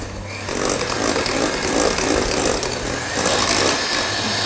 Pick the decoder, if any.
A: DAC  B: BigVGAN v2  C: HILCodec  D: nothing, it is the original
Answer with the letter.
D